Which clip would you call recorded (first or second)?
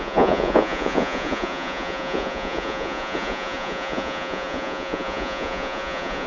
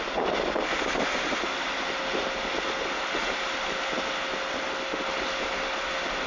second